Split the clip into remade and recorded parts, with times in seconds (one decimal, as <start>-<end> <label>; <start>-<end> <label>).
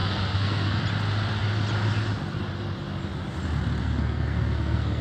0.0-0.8 remade; 0.8-3.8 recorded; 3.8-5.0 remade